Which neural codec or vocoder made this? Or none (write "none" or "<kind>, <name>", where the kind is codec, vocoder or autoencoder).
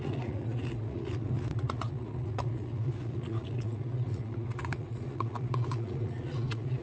vocoder, Vocos